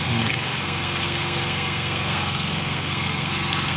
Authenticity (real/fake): fake